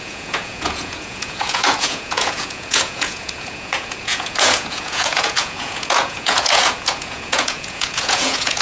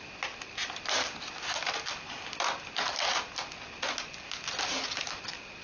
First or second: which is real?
second